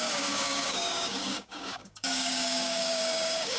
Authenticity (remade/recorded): remade